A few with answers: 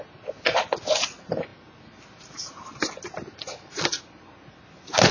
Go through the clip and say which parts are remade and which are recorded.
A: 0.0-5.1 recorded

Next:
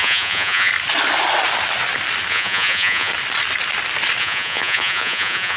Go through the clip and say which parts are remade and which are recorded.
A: 0.0-0.7 remade; 0.7-2.3 recorded; 2.3-3.1 remade; 3.1-4.2 recorded; 4.2-5.6 remade

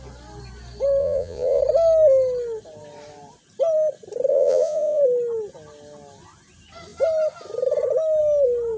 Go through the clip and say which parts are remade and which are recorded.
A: 0.0-1.0 recorded; 1.0-1.6 remade; 1.6-4.3 recorded; 4.3-5.0 remade; 5.0-8.8 recorded

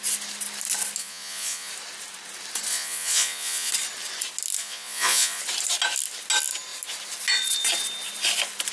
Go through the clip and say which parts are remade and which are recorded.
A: 0.0-1.0 recorded; 1.0-1.7 remade; 1.7-2.7 recorded; 2.7-3.7 remade; 3.7-4.6 recorded; 4.6-5.4 remade; 5.4-8.7 recorded

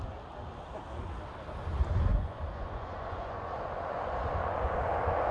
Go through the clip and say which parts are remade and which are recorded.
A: 0.0-2.1 recorded; 2.1-5.3 remade

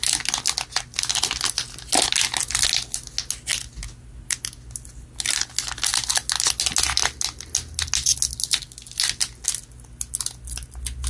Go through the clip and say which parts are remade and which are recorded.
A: 0.0-11.1 recorded